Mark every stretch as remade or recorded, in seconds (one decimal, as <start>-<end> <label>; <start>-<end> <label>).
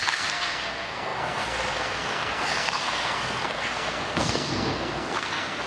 0.0-5.7 remade